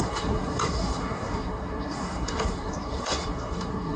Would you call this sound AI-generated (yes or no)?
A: yes